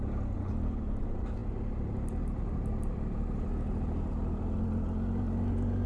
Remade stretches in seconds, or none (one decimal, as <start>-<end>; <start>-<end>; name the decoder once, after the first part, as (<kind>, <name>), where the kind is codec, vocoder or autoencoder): none